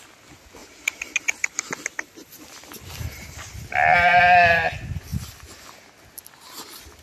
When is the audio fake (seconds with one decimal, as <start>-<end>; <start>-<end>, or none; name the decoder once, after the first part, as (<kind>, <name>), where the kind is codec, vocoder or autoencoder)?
none